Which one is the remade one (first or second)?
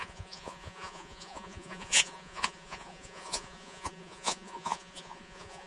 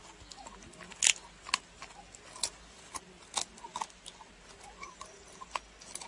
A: first